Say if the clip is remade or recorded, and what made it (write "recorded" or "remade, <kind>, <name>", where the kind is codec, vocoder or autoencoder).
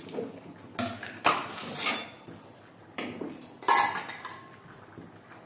recorded